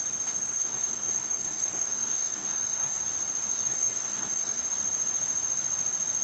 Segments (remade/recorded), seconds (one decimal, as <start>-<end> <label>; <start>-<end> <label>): 0.0-0.5 recorded; 0.5-3.0 remade; 3.0-3.5 recorded; 3.5-4.6 remade; 4.6-6.2 recorded